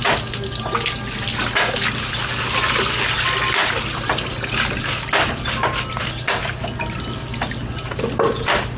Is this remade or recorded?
recorded